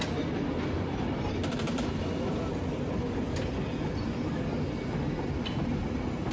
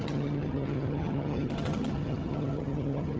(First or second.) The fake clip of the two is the second